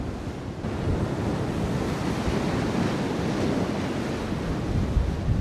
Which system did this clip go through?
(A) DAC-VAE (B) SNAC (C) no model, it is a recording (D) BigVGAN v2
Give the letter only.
C